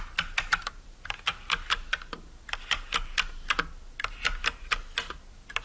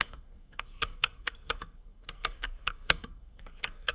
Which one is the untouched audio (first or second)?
first